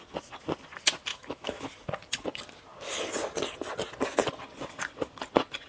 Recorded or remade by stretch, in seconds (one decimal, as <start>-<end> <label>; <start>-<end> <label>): 0.0-1.1 recorded; 1.1-1.6 remade; 1.6-5.7 recorded